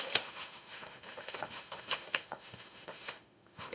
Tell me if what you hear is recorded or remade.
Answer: remade